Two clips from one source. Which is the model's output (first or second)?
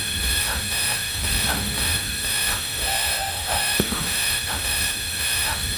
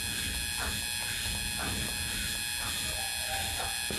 first